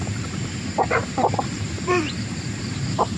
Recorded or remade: remade